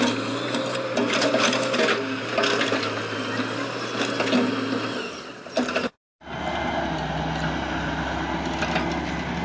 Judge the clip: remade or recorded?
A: recorded